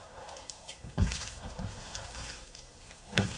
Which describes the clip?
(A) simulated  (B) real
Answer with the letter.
A